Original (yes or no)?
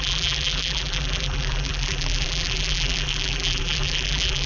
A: no